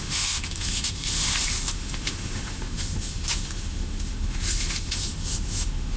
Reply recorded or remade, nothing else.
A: remade